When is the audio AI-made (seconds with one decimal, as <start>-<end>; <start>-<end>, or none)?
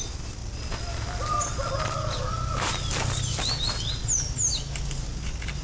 none